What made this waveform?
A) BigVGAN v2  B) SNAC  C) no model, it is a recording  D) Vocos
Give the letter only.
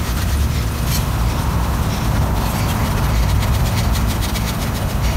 A